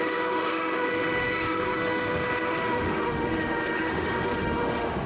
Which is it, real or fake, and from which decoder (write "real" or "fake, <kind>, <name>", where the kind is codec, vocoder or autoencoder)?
fake, autoencoder, DAC-VAE